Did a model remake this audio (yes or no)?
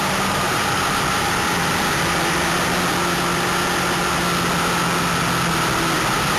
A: no